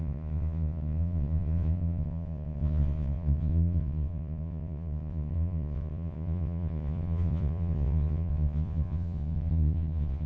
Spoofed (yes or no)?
yes